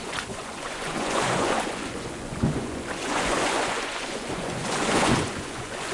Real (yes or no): no